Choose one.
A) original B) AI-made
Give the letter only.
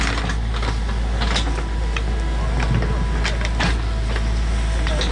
A